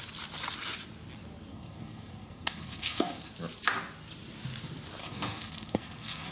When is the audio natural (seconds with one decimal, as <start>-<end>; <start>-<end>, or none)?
0.0-1.5; 3.3-5.0